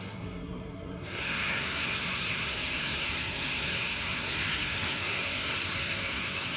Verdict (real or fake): fake